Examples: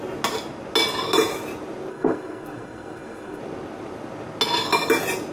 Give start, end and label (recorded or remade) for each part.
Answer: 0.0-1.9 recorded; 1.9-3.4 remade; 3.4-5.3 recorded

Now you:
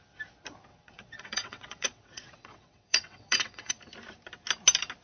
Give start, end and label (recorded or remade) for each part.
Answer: 0.0-0.7 recorded; 0.7-3.7 remade; 3.7-5.0 recorded

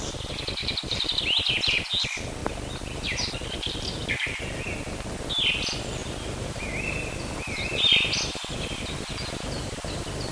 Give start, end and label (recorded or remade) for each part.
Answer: 0.0-0.6 recorded; 0.6-1.2 remade; 1.2-2.4 recorded; 2.4-4.4 remade; 4.4-6.0 recorded; 6.0-6.6 remade; 6.6-10.3 recorded

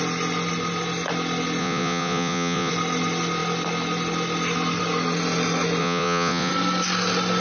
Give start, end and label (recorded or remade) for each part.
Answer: 0.0-1.6 recorded; 1.6-2.7 remade; 2.7-5.8 recorded; 5.8-6.5 remade; 6.5-7.4 recorded

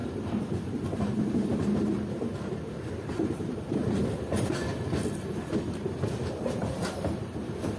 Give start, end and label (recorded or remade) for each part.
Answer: 0.0-4.1 remade; 4.1-6.6 recorded; 6.6-7.8 remade

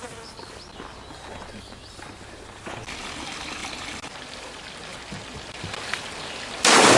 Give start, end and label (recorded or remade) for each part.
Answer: 0.0-7.0 recorded

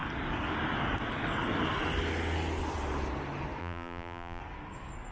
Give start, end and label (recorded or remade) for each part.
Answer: 0.0-3.6 recorded; 3.6-4.4 remade; 4.4-5.1 recorded

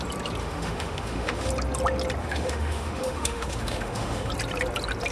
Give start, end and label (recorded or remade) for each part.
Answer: 0.0-0.4 recorded; 0.4-1.5 remade; 1.5-2.2 recorded; 2.2-4.3 remade; 4.3-5.1 recorded